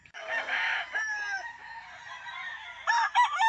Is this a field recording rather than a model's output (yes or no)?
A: yes